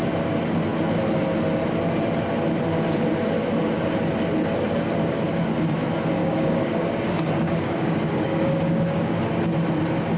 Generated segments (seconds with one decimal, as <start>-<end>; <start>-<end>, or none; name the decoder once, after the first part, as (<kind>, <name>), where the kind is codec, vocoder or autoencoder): 6.2-9.2 (codec, DAC)